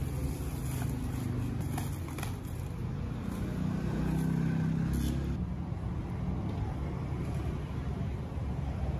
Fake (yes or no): no